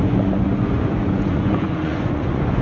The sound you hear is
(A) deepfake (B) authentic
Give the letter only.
A